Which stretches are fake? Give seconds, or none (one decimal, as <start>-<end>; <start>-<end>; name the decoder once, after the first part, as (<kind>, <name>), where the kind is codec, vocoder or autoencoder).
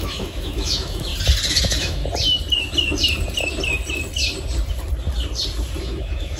0.0-1.1 (autoencoder, DAC-VAE); 1.6-2.0; 5.8-6.4